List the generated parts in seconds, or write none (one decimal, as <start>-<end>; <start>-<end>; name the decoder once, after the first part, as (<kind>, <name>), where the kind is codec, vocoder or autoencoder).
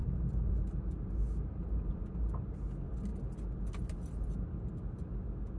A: none